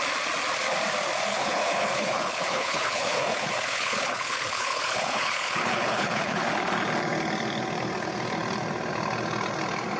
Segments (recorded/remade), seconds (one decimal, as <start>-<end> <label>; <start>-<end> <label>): 0.0-1.3 recorded; 1.3-6.4 remade; 6.4-10.0 recorded